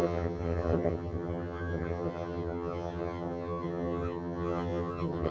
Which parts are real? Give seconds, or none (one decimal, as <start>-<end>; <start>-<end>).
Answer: none